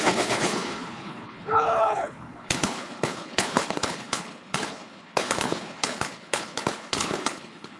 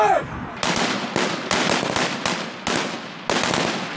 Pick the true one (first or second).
second